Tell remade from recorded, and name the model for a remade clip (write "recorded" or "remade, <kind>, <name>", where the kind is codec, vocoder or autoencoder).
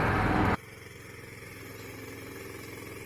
recorded